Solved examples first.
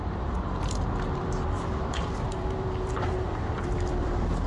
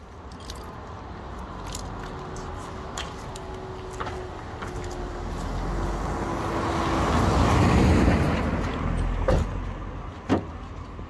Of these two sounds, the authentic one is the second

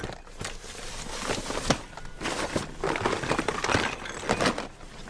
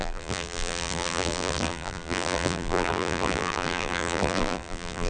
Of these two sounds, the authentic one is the first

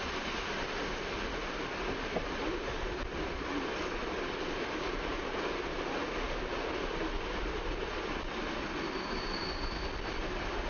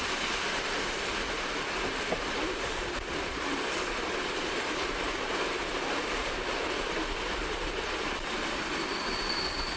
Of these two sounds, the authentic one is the first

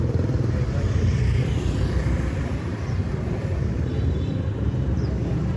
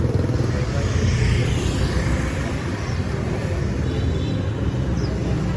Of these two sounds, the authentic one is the second